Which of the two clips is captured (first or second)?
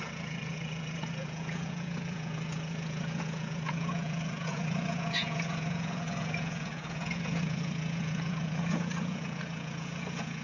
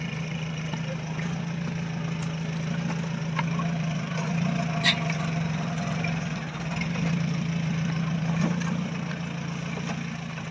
second